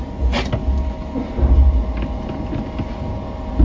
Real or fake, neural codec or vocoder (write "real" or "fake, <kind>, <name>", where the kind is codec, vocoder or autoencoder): real